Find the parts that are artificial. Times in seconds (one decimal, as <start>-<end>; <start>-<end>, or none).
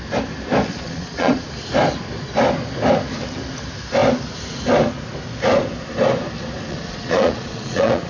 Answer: 0.7-1.4; 6.7-8.1